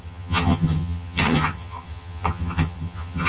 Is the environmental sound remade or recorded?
remade